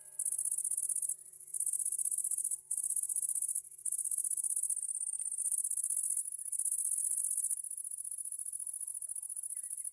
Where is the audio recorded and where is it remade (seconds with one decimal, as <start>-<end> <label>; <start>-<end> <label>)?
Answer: 0.0-1.3 recorded; 1.3-4.5 remade; 4.5-9.9 recorded